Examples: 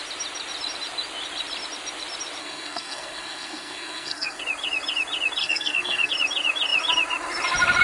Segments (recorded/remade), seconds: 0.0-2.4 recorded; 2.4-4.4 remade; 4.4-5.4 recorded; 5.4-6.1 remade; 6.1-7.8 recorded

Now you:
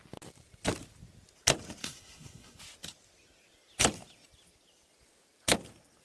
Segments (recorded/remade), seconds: 0.0-1.8 recorded; 1.8-2.6 remade; 2.6-6.0 recorded

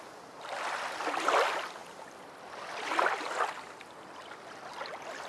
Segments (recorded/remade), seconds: 0.0-5.3 recorded

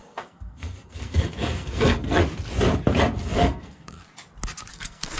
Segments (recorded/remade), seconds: 0.0-2.2 remade; 2.2-3.2 recorded; 3.2-4.0 remade; 4.0-4.7 recorded; 4.7-5.2 remade